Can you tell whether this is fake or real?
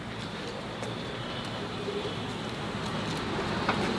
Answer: fake